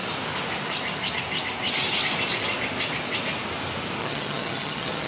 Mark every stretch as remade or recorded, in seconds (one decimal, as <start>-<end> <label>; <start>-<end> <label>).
0.0-4.0 recorded; 4.0-5.1 remade